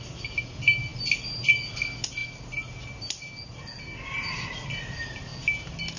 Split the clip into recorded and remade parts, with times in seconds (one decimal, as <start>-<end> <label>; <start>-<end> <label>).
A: 0.0-6.0 recorded